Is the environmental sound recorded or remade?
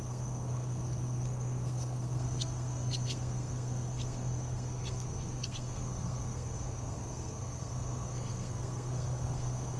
remade